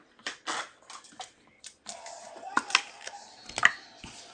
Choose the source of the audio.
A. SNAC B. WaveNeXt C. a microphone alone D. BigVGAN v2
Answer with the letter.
C